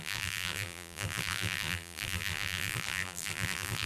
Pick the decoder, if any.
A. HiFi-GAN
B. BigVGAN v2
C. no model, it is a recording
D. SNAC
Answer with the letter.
B